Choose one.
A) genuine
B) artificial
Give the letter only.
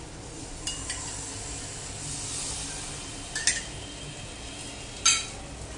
A